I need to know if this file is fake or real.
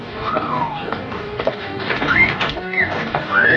fake